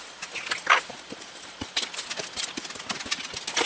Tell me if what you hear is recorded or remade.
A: recorded